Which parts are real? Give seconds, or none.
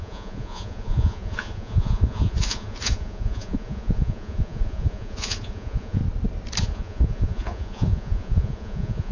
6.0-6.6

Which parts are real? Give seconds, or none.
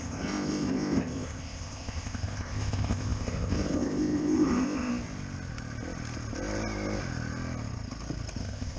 4.9-8.4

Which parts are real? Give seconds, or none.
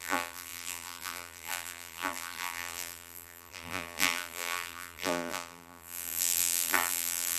none